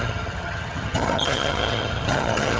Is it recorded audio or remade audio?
remade